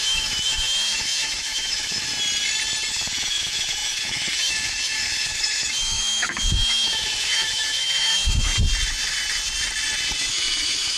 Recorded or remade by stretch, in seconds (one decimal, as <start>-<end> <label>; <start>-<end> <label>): 0.0-2.1 remade; 2.1-2.9 recorded; 2.9-8.5 remade; 8.5-10.3 recorded; 10.3-11.0 remade